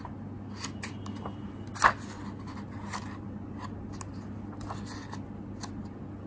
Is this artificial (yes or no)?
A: no